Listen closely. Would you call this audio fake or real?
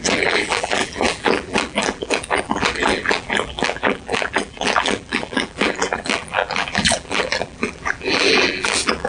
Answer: fake